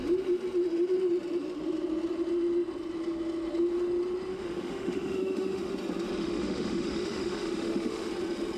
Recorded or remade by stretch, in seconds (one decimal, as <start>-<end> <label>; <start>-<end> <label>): 0.0-4.3 recorded; 4.3-5.7 remade; 5.7-6.2 recorded; 6.2-8.1 remade; 8.1-8.6 recorded